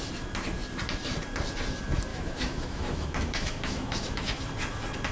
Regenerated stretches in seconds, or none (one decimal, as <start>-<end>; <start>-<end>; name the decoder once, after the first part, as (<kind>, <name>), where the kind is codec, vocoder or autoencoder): 2.1-4.4 (autoencoder, DAC-VAE)